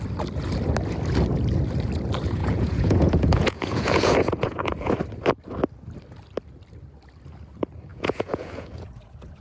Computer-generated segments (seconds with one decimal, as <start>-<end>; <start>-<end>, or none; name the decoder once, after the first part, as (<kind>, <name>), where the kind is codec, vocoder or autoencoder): 2.4-4.9 (vocoder, Vocos); 7.9-9.4